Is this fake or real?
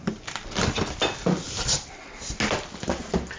real